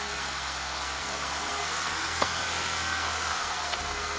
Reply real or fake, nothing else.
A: fake